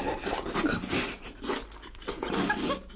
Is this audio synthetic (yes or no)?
no